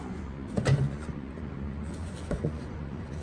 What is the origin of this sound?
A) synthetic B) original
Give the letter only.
A